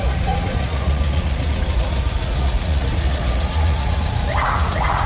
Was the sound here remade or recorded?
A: remade